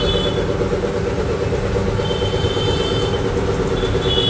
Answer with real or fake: real